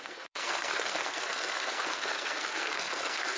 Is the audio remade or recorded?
remade